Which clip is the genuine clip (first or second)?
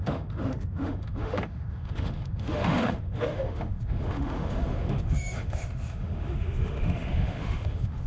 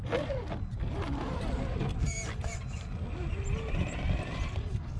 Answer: second